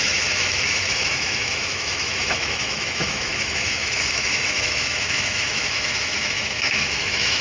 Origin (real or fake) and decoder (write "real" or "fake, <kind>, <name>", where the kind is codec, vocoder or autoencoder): fake, autoencoder, DAC-VAE